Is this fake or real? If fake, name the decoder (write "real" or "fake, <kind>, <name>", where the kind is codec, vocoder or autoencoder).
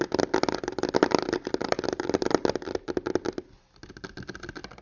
real